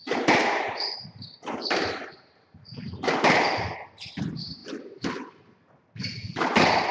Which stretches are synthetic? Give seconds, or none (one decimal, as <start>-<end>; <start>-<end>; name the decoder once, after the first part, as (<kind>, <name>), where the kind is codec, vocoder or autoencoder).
0.4-2.9 (vocoder, BigVGAN v2)